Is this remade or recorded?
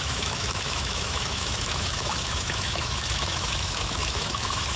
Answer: remade